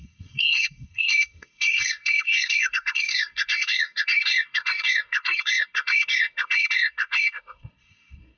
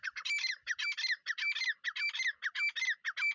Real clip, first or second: second